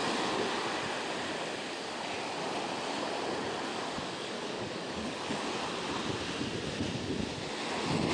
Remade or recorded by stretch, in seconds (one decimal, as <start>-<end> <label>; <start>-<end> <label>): 0.0-3.7 recorded; 3.7-5.6 remade; 5.6-8.1 recorded